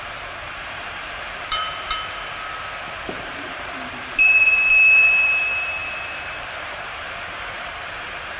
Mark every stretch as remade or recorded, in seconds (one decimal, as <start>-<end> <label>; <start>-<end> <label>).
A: 0.0-1.6 remade; 1.6-3.0 recorded; 3.0-8.4 remade